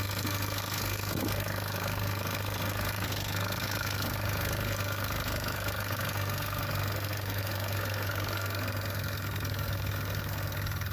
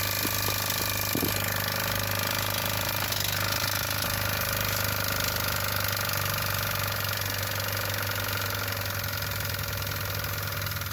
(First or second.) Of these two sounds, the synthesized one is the first